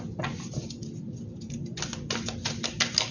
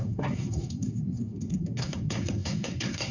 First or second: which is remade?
second